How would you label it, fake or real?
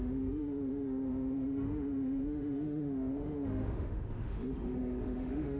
fake